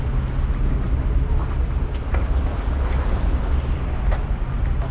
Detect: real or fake real